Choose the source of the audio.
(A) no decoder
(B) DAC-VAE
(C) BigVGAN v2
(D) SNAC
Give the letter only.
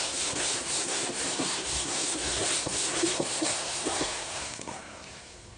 D